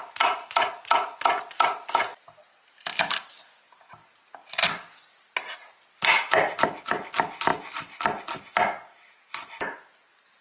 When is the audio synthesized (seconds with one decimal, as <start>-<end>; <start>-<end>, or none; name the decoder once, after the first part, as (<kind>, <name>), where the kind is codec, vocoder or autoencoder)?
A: none

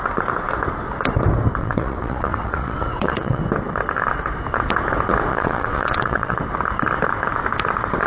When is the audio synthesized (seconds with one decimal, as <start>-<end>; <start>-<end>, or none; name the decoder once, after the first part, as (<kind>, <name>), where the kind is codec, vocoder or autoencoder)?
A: 1.6-3.4 (vocoder, WaveNeXt); 5.3-6.4

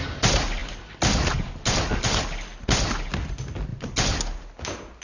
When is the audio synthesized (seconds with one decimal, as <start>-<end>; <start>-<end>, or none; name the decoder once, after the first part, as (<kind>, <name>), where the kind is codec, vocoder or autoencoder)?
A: none

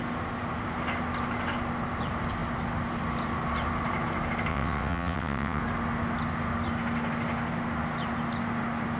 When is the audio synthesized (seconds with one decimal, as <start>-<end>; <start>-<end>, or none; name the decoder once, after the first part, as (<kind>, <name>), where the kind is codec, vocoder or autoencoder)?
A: 4.5-5.6 (vocoder, WaveNeXt)

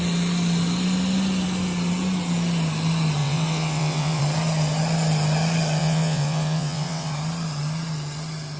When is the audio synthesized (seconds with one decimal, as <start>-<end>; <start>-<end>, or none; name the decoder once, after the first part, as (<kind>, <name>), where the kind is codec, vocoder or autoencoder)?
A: 3.2-4.2 (vocoder, WaveNeXt); 5.8-7.1

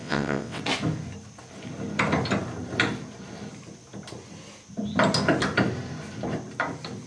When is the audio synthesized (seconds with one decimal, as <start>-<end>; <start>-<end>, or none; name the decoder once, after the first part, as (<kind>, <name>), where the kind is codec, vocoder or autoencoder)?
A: 0.0-0.6 (vocoder, WaveNeXt)

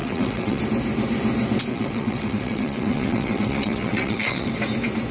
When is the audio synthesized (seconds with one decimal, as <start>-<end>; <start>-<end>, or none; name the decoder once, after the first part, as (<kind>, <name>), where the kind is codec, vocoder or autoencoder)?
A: 0.0-0.6 (vocoder, WaveNeXt); 1.7-4.5

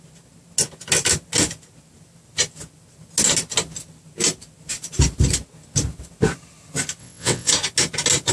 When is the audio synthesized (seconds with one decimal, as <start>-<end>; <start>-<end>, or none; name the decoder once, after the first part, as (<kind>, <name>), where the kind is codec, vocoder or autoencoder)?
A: 7.0-7.5 (vocoder, WaveNeXt)